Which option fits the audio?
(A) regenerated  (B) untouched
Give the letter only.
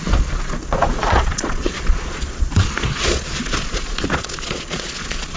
A